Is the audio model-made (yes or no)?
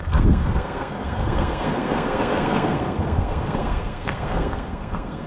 yes